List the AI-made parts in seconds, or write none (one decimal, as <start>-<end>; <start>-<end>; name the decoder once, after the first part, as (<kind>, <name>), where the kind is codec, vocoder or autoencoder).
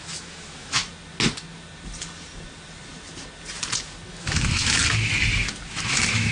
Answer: 0.0-0.8 (autoencoder, DAC-VAE); 4.1-4.8; 5.7-6.3